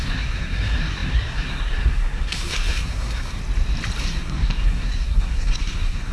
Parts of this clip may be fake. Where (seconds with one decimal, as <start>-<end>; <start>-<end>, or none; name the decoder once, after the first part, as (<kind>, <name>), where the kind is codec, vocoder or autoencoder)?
0.0-3.4 (codec, SNAC); 4.0-6.1